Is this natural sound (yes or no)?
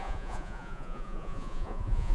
no